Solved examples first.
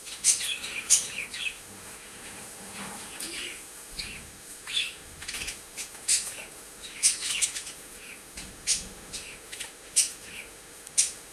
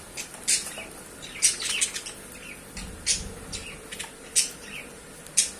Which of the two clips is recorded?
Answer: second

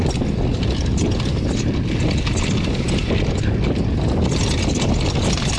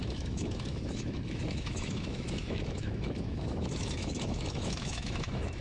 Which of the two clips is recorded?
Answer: first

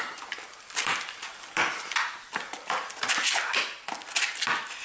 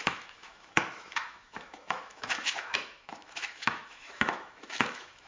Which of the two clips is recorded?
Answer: first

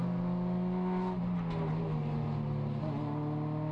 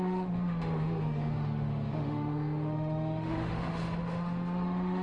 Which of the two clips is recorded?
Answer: first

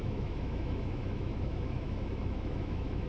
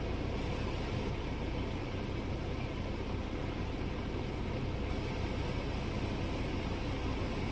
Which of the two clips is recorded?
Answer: second